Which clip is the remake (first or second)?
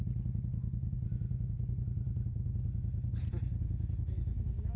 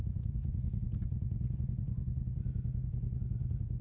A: second